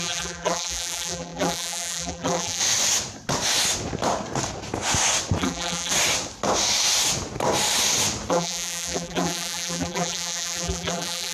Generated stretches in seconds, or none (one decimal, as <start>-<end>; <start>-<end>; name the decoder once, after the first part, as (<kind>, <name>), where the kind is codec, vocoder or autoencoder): 0.0-2.6 (vocoder, BigVGAN v2); 5.4-5.9; 8.3-11.3

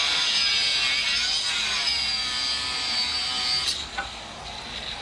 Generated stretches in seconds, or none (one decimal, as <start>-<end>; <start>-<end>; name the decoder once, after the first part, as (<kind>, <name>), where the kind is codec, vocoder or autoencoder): none

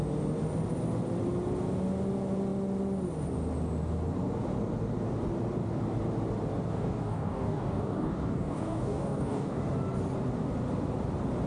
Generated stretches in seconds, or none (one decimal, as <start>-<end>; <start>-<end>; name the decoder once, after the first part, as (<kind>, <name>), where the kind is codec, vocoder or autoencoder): 6.7-9.6 (codec, DAC)

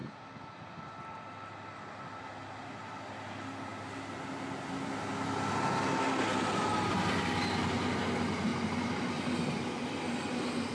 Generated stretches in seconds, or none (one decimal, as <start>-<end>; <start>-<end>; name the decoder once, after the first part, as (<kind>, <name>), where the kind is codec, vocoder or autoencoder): none

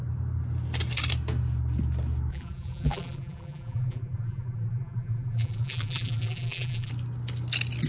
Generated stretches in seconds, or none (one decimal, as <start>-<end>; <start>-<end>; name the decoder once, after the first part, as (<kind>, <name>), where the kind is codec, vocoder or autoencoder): 2.3-6.9 (vocoder, BigVGAN v2)

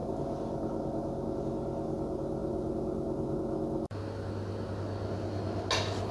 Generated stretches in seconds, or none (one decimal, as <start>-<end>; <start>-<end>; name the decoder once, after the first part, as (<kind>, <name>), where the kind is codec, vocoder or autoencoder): none